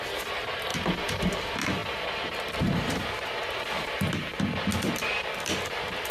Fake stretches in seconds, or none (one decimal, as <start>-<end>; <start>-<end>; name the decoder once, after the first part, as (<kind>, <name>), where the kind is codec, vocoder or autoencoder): 0.7-1.3 (vocoder, BigVGAN v2)